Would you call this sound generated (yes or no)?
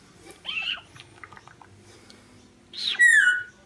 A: no